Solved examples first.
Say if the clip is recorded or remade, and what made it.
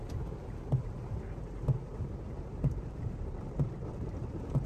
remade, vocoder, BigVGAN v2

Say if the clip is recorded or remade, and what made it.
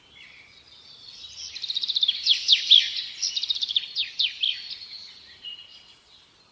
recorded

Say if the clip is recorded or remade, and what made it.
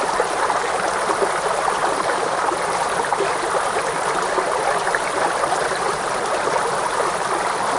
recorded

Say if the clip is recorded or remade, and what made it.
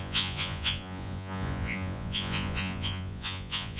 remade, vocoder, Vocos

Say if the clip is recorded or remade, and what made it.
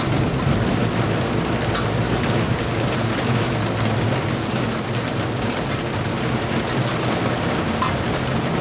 recorded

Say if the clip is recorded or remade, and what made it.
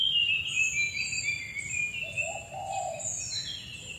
recorded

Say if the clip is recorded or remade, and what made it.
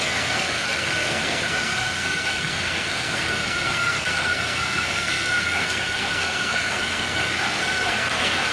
remade, codec, SNAC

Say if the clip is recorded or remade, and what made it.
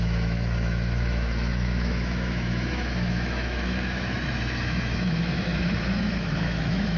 remade, autoencoder, DAC-VAE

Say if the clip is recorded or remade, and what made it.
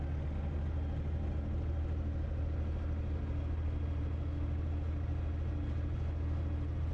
recorded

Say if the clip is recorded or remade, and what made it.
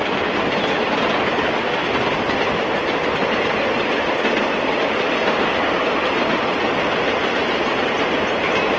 recorded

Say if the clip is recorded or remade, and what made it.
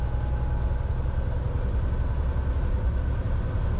recorded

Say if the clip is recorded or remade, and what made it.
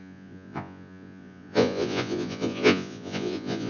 remade, vocoder, Vocos